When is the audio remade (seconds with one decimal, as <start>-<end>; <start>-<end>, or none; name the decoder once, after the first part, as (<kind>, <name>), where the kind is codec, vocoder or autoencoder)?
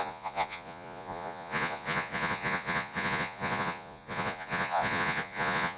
0.0-5.8 (vocoder, Vocos)